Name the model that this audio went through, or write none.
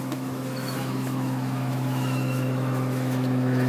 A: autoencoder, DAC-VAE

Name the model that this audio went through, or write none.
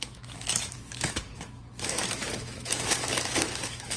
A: autoencoder, DAC-VAE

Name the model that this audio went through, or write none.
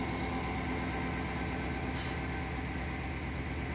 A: none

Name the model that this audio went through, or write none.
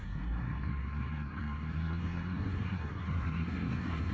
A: codec, SNAC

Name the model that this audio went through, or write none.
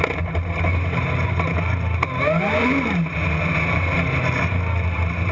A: none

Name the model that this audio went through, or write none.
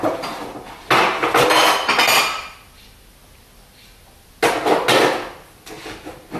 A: none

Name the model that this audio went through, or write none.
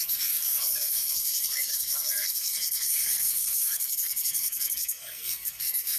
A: codec, SNAC